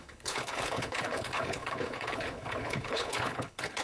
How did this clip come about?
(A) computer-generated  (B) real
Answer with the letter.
A